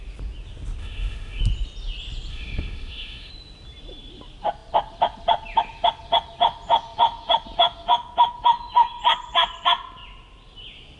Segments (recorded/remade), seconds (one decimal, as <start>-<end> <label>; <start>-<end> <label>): 0.0-0.8 recorded; 0.8-1.4 remade; 1.4-2.3 recorded; 2.3-3.3 remade; 3.3-11.0 recorded